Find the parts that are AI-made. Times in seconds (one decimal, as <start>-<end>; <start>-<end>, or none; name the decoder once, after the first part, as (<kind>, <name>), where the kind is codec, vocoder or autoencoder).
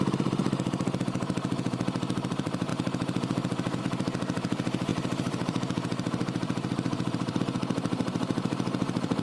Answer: 0.0-0.4 (vocoder, BigVGAN v2); 1.0-2.7; 3.8-9.2